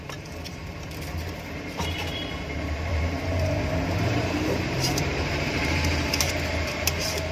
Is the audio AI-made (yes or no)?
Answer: yes